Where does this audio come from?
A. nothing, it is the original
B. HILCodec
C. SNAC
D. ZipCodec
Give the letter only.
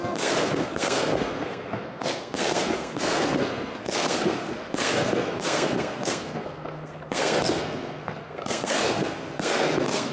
C